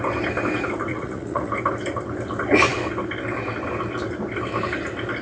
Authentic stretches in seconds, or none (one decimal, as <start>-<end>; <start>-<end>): 0.0-0.9; 1.5-5.2